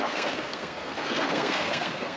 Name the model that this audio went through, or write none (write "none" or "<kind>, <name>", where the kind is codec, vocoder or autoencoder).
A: codec, SNAC